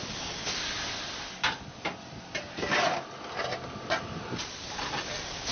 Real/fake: real